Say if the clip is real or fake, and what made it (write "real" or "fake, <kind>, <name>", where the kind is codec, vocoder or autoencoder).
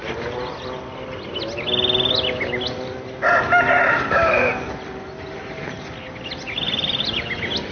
real